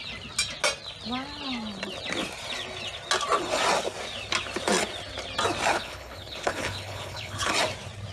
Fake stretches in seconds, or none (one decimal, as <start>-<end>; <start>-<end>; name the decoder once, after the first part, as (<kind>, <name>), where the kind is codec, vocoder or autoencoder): 5.7-7.5 (codec, HILCodec)

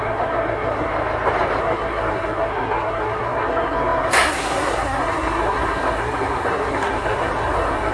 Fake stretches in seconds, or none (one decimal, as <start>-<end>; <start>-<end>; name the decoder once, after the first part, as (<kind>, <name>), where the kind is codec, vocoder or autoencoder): 0.0-0.9 (codec, SNAC); 1.6-7.9

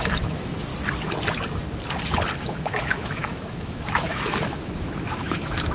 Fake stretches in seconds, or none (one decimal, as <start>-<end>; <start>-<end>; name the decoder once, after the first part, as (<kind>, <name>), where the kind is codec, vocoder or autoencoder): 0.0-0.7 (autoencoder, DAC-VAE); 2.4-5.7

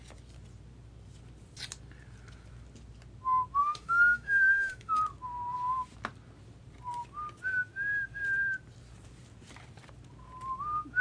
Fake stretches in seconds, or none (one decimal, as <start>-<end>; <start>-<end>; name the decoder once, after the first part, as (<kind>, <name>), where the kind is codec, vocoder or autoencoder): 3.6-5.0 (autoencoder, DAC-VAE)

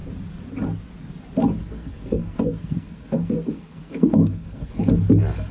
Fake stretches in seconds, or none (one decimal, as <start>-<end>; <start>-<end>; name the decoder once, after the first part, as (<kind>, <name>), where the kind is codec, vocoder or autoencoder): 1.6-4.9 (codec, SNAC)

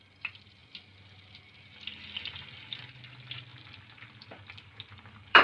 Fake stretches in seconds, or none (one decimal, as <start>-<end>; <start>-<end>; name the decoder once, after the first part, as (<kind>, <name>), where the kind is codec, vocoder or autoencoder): 0.0-0.6 (vocoder, BigVGAN v2); 2.8-5.4